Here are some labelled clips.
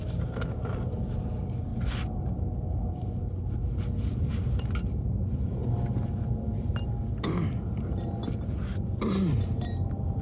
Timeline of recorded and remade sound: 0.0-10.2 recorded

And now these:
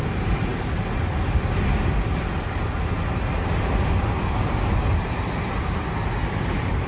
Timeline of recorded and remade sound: 0.0-6.9 recorded

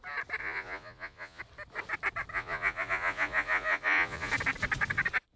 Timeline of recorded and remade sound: 0.0-0.4 recorded; 0.4-1.4 remade; 1.4-2.3 recorded; 2.3-4.3 remade; 4.3-5.4 recorded